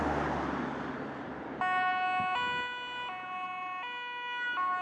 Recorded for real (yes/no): yes